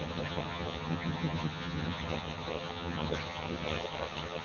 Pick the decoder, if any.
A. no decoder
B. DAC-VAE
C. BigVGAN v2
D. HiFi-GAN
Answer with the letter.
D